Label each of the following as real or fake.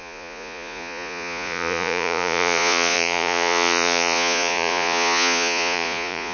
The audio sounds fake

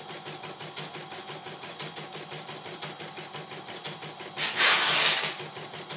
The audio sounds real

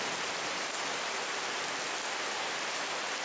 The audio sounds real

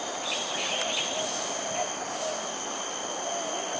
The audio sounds real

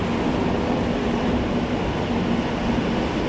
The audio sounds real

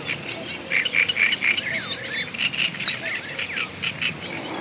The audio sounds real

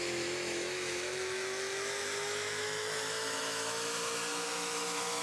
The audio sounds fake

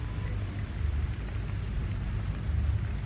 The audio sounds real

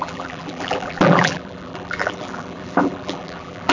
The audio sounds fake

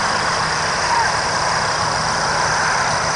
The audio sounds fake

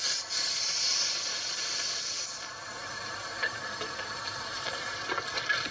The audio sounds real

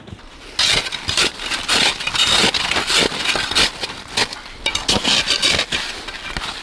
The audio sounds real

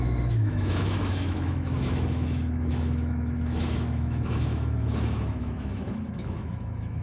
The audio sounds fake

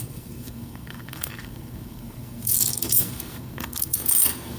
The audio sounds fake